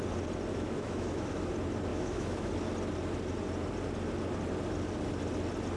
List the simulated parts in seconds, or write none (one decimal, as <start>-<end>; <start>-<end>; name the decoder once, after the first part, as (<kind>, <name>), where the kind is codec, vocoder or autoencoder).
0.5-1.5 (autoencoder, DAC-VAE); 1.9-2.5